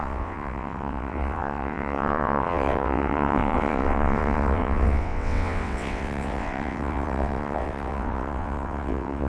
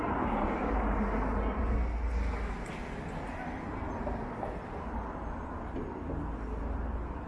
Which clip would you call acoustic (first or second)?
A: second